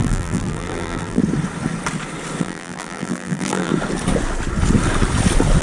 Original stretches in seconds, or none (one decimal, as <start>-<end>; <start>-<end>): 1.2-2.4; 3.7-5.6